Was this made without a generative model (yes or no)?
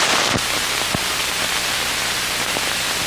no